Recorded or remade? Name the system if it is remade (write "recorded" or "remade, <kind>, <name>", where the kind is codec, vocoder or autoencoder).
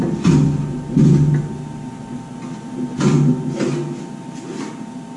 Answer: recorded